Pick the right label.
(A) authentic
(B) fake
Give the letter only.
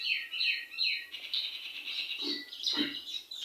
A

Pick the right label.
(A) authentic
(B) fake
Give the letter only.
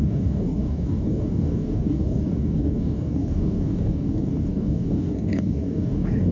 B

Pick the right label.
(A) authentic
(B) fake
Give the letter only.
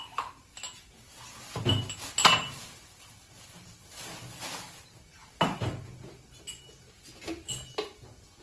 A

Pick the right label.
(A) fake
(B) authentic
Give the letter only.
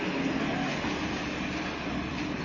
A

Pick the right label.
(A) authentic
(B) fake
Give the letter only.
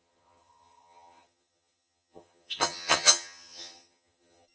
B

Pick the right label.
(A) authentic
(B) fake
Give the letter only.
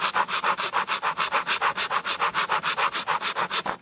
A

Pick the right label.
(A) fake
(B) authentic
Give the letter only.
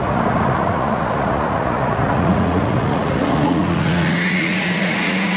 A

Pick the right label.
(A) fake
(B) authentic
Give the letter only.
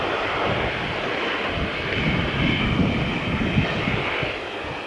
B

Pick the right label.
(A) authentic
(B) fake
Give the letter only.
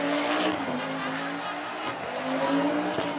A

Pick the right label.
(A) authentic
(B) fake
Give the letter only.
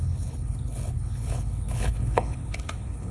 B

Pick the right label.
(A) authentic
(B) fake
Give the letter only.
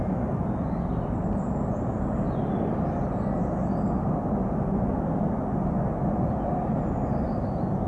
A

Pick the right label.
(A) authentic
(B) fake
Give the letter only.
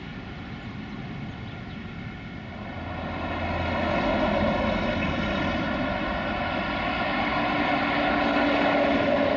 A